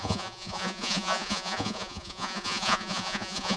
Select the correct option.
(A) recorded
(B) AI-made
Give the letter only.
B